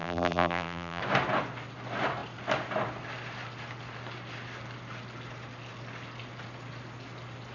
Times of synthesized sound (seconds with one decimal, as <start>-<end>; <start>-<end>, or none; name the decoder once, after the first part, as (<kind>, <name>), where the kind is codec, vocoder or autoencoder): 0.0-1.0 (vocoder, BigVGAN v2)